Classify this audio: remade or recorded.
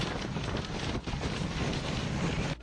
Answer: recorded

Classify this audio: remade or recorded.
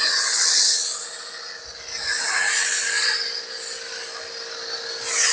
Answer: recorded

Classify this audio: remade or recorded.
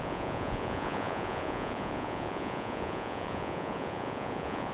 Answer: remade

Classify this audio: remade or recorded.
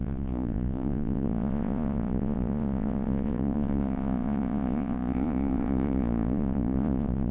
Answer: remade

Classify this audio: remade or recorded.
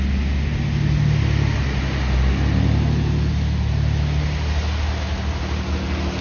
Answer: recorded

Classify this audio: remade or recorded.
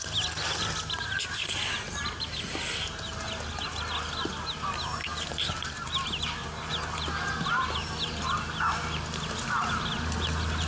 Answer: recorded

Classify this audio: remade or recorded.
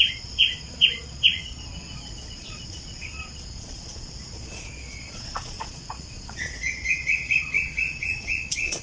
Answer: remade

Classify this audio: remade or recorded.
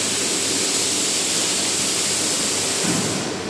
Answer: recorded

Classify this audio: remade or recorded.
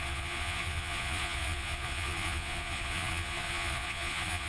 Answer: remade